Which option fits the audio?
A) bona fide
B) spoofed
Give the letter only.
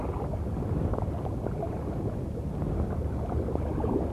A